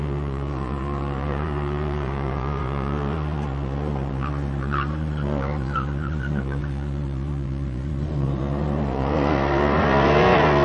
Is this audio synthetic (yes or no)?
yes